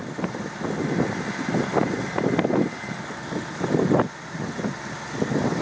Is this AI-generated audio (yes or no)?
no